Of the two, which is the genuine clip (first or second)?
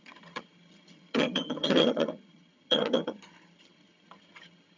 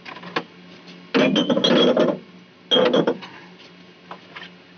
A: second